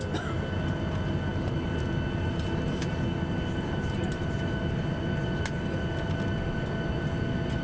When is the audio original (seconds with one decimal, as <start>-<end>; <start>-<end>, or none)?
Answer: 0.0-7.6